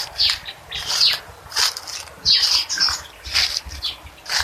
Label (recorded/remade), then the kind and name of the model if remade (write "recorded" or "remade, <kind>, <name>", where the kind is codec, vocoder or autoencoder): recorded